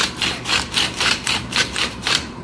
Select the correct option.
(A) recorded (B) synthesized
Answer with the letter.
B